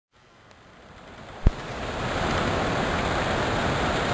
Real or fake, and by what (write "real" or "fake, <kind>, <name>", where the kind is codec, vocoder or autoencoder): real